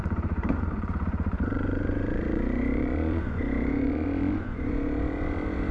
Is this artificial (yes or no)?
yes